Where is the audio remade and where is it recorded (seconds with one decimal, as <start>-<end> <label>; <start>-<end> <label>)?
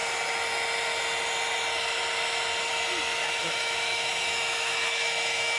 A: 0.0-3.4 recorded; 3.4-5.6 remade